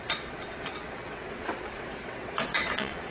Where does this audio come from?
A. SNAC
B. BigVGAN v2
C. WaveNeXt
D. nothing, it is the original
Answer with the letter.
C